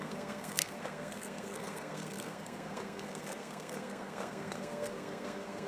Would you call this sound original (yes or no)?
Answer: no